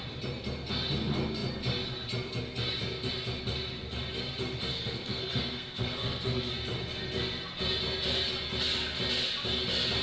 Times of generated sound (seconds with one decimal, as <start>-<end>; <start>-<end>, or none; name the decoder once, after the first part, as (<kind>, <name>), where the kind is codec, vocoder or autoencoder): 4.7-6.5 (codec, SNAC)